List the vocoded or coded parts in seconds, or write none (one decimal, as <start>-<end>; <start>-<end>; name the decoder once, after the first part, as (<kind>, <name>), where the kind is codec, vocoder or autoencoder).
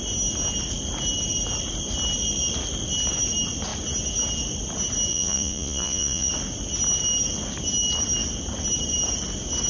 5.1-6.3 (vocoder, Vocos)